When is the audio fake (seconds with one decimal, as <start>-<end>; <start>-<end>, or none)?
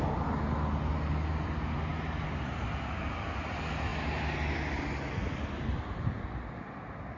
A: none